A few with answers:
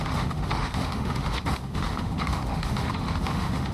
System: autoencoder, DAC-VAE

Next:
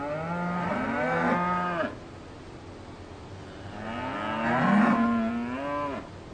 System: none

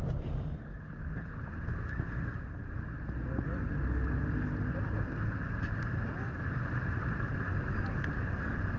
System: none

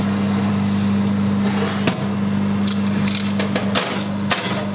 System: none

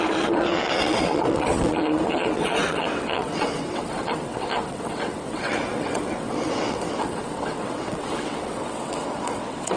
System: vocoder, WaveNeXt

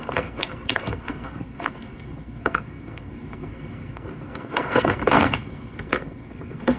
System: codec, SNAC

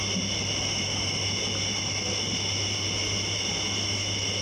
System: none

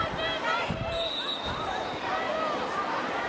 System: vocoder, BigVGAN v2